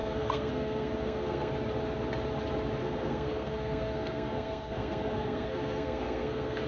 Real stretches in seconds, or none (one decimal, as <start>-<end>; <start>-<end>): 1.5-2.8

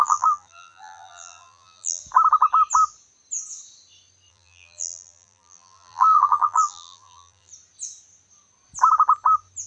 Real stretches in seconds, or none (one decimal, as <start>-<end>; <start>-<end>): 2.0-4.3; 7.5-9.7